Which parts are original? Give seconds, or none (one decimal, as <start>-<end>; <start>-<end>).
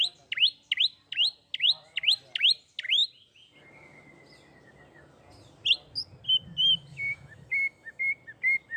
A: 0.0-6.9; 8.0-8.8